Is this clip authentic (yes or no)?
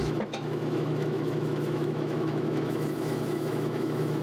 no